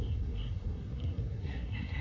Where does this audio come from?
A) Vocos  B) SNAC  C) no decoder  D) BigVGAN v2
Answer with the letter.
B